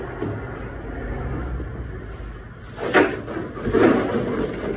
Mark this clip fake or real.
real